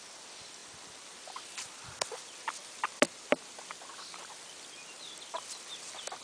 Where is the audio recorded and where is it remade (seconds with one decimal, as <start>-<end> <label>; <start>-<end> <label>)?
0.0-6.2 recorded